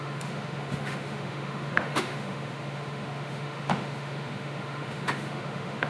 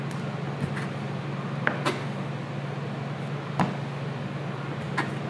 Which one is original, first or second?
second